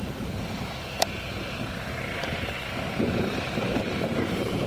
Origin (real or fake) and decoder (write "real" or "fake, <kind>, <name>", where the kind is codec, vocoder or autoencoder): fake, vocoder, BigVGAN v2